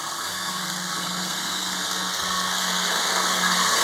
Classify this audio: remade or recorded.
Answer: remade